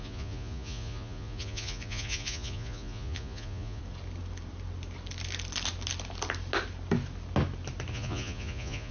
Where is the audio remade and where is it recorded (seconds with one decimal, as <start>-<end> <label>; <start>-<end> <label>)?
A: 0.0-3.8 remade; 3.8-7.9 recorded; 7.9-8.9 remade